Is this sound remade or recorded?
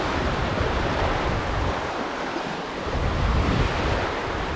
remade